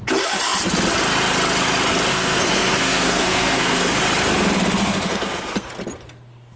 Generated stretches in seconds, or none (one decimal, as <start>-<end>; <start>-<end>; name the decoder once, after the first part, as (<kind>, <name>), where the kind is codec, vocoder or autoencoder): 2.1-4.0 (codec, SNAC); 4.8-5.7